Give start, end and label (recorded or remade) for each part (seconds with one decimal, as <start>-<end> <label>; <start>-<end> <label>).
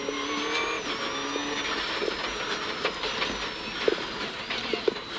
0.0-5.2 recorded